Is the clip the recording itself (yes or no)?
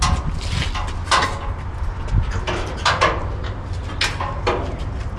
yes